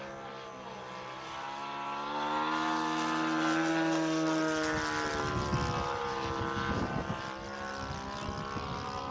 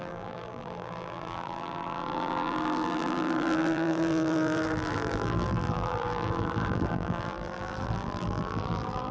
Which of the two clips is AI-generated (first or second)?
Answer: second